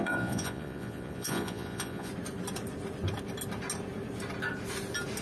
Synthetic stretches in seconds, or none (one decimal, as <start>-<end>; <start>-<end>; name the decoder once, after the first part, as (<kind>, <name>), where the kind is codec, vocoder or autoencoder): 0.0-2.1 (vocoder, Vocos)

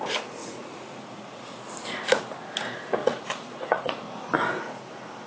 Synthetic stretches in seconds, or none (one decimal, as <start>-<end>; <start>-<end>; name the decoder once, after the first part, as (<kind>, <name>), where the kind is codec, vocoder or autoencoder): 0.4-1.6 (vocoder, Vocos); 3.0-4.0

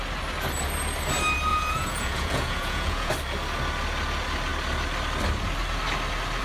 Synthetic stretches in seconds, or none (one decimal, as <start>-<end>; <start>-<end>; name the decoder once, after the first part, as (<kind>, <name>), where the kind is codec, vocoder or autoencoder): 1.5-3.1 (vocoder, Vocos)

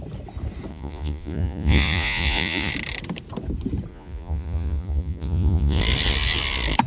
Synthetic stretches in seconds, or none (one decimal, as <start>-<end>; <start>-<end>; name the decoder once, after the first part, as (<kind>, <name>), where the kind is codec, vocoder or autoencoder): 0.7-2.7 (vocoder, Vocos); 3.9-5.8

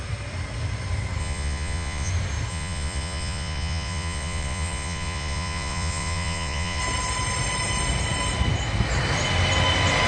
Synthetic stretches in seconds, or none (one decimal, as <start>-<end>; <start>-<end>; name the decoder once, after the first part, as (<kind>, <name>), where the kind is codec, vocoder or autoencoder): 1.2-2.1 (vocoder, Vocos); 2.5-6.8